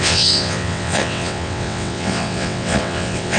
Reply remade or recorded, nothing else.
remade